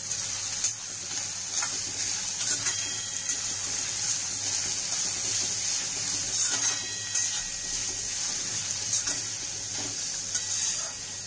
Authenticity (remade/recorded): recorded